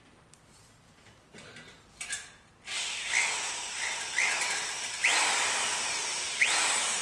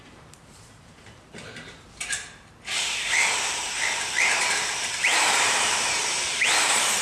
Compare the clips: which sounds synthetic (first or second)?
second